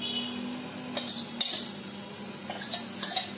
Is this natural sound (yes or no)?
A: yes